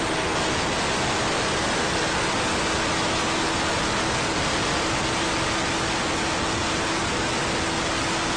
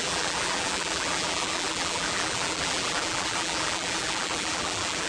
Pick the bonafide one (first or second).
first